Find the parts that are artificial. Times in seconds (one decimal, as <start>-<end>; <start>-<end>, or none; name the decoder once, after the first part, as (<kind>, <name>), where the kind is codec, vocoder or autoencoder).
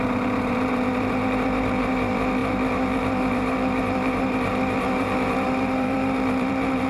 0.0-6.9 (vocoder, BigVGAN v2)